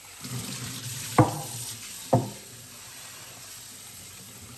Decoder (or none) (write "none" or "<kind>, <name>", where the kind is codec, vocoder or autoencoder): vocoder, BigVGAN v2